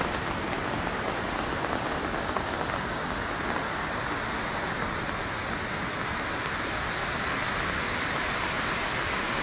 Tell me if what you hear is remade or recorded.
recorded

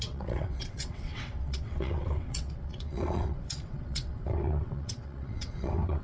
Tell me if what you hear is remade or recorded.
remade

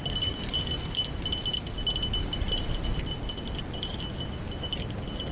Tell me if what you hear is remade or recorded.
recorded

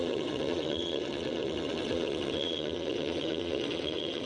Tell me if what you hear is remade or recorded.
remade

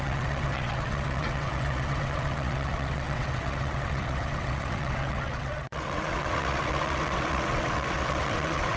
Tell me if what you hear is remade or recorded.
remade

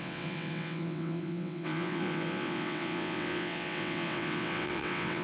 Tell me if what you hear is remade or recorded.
remade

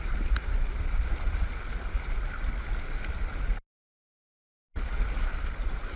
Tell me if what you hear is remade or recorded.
recorded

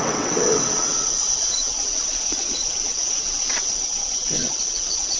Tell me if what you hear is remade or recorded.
remade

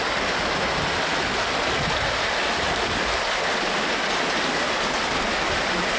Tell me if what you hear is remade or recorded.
recorded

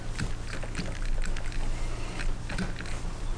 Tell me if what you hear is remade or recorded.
recorded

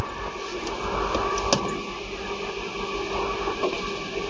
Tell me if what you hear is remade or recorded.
recorded